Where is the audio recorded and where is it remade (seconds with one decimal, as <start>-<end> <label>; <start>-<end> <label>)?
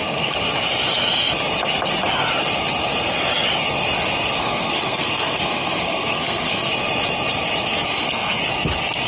0.0-4.4 recorded; 4.4-6.7 remade; 6.7-7.9 recorded; 7.9-8.4 remade; 8.4-9.1 recorded